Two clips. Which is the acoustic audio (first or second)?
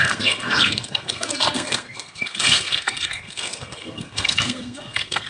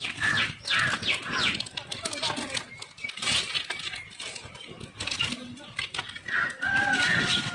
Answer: second